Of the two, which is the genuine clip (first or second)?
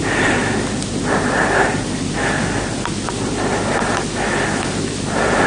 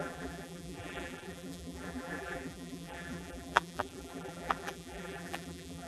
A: first